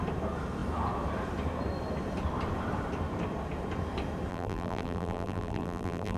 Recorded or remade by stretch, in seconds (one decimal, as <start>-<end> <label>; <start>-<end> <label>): 0.0-4.3 recorded; 4.3-6.2 remade